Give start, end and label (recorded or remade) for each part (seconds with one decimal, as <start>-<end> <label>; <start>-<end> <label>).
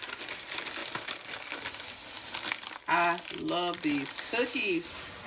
0.0-5.3 recorded